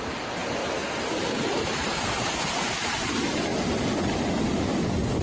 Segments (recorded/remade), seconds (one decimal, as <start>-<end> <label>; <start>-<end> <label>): 0.0-5.2 recorded